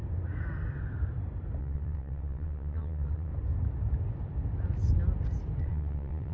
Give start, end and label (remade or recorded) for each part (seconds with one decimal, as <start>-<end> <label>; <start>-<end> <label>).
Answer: 0.0-1.6 recorded; 1.6-3.3 remade; 3.3-5.6 recorded; 5.6-6.3 remade